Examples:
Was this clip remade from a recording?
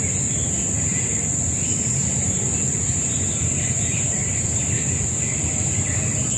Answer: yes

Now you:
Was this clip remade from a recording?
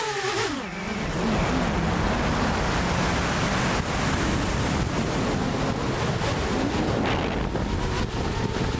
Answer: no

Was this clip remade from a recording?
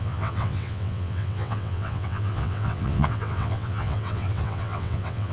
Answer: yes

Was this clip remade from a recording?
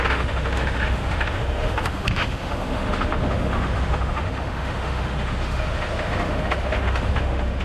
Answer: yes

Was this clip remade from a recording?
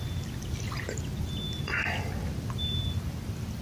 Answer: no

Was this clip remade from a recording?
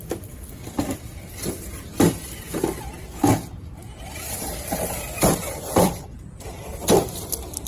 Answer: yes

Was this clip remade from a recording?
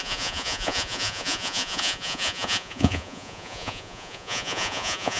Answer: yes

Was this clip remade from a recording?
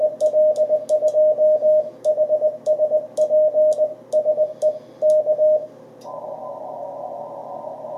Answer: no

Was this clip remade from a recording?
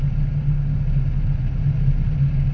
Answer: no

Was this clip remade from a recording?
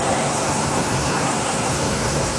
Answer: yes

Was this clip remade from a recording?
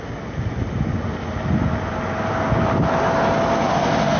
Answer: no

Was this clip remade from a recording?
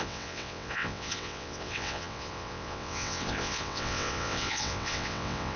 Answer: yes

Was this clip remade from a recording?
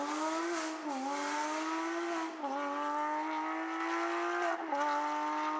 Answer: no